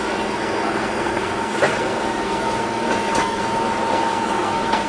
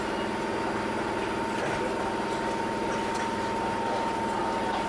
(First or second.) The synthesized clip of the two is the first